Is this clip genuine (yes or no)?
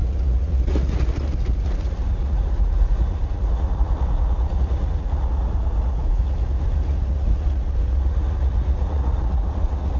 no